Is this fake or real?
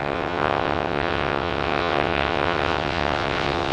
fake